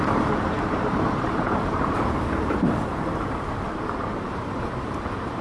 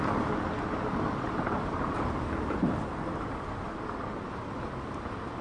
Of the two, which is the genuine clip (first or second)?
second